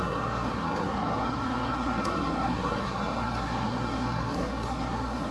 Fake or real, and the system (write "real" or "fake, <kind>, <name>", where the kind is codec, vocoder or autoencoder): fake, codec, SNAC